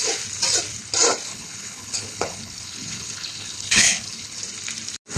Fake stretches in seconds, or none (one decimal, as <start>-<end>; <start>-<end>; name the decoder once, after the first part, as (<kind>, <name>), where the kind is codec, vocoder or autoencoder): 1.3-4.4 (codec, HILCodec)